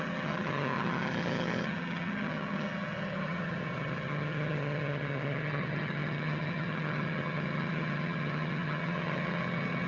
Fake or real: fake